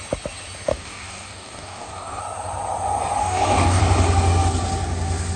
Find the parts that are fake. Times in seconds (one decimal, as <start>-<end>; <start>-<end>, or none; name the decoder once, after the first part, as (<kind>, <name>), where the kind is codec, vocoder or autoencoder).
0.7-2.2 (codec, DAC); 3.2-3.8